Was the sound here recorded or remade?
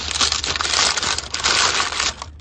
recorded